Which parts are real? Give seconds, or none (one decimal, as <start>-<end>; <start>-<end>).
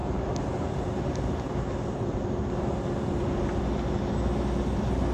0.0-5.1